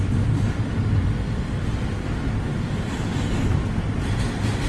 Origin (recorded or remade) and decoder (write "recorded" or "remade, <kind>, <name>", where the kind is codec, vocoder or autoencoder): recorded